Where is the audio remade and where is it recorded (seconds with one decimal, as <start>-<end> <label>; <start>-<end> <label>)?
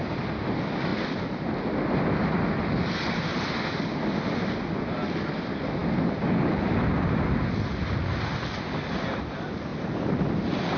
0.0-10.8 recorded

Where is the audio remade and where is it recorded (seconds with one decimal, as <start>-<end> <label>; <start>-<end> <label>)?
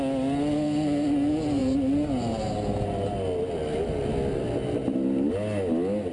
0.0-6.1 recorded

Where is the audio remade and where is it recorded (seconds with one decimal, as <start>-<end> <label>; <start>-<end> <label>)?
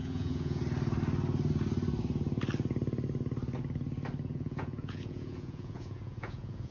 0.0-0.6 remade; 0.6-4.3 recorded; 4.3-6.7 remade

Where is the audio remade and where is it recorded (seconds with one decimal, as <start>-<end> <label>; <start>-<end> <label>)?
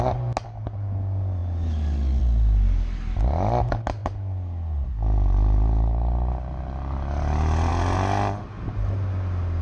0.0-9.6 recorded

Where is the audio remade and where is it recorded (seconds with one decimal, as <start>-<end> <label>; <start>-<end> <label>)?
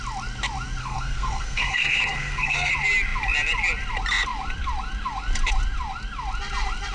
0.0-0.8 recorded; 0.8-2.7 remade; 2.7-6.9 recorded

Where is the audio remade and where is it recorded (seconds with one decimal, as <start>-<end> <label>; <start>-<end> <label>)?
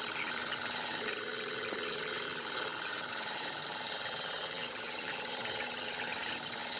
0.0-2.9 recorded; 2.9-6.8 remade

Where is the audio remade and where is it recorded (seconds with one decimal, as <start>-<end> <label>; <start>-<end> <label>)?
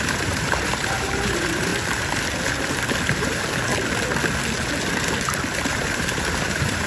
0.0-1.7 remade; 1.7-3.1 recorded; 3.1-3.7 remade; 3.7-5.7 recorded; 5.7-6.9 remade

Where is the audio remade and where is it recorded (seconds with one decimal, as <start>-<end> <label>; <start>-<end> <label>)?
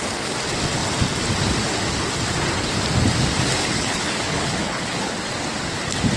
0.0-3.6 recorded; 3.6-5.1 remade; 5.1-6.2 recorded